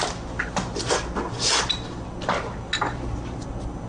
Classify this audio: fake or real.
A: real